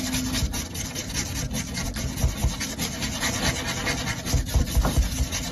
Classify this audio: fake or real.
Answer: real